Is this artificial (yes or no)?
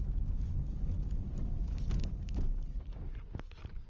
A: no